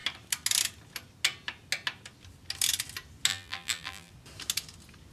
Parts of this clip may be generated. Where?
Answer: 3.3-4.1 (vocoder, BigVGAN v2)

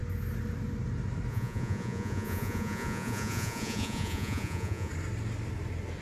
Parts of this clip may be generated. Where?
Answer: 1.3-4.9 (vocoder, Vocos)

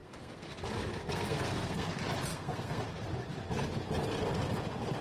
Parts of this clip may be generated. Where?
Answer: 0.0-0.5 (codec, SNAC); 0.9-1.9; 2.3-2.8

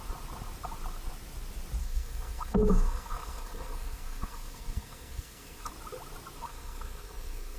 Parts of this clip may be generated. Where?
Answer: 1.8-5.7 (codec, SNAC); 6.4-7.6

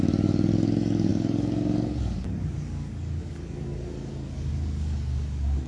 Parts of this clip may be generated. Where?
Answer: 0.0-5.7 (codec, DAC)

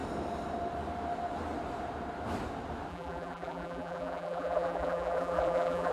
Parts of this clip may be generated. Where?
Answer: 2.9-5.9 (vocoder, BigVGAN v2)

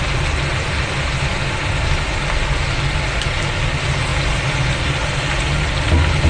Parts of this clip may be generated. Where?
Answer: none